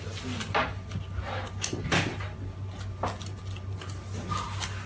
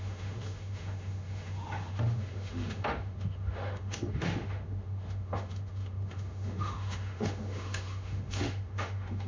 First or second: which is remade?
second